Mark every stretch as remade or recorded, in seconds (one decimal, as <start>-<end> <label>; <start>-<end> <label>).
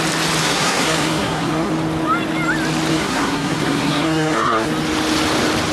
0.0-0.4 recorded; 0.4-1.7 remade; 1.7-2.9 recorded; 2.9-4.7 remade; 4.7-5.7 recorded